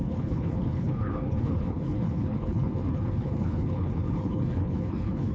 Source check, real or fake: fake